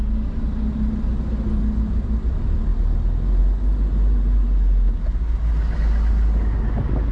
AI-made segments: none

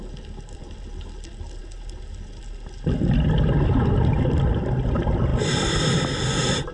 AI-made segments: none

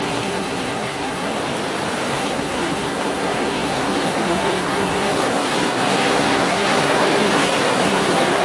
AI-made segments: 0.0-1.4 (codec, SNAC); 2.1-8.4